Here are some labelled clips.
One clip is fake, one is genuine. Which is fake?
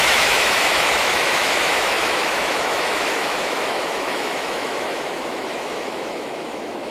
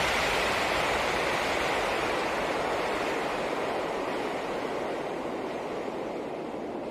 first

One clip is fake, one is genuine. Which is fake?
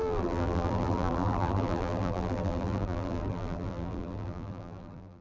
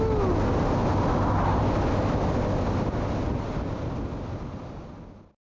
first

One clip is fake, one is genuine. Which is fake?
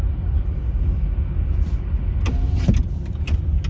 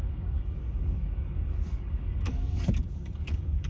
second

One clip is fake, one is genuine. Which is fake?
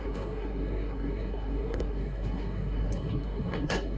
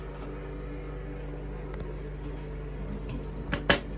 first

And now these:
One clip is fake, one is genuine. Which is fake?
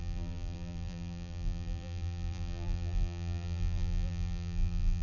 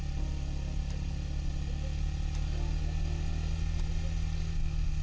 first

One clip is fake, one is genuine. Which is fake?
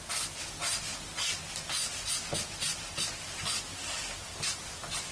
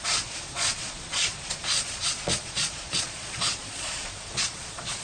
second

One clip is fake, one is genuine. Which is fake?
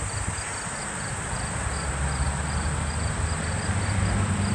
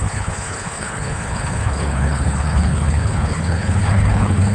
second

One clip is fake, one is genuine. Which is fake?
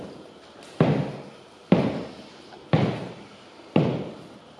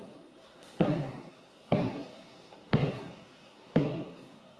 second